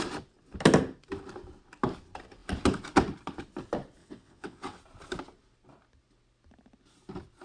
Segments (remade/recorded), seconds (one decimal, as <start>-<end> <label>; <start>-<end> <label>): 0.0-4.0 recorded; 4.0-4.8 remade; 4.8-7.4 recorded